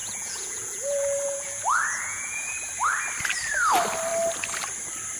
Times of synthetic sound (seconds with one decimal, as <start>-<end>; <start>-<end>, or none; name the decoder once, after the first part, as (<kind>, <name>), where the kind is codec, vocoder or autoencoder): 0.0-2.5 (vocoder, Vocos)